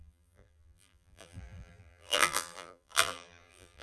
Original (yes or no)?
no